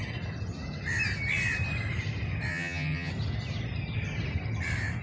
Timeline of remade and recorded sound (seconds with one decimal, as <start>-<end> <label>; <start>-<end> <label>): 0.0-2.5 recorded; 2.5-3.1 remade; 3.1-5.0 recorded